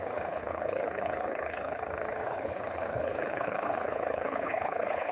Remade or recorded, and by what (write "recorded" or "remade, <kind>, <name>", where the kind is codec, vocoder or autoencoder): remade, codec, HILCodec